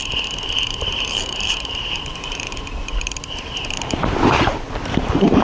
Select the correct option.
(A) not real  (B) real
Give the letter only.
A